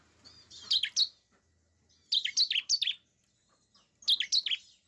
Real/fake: real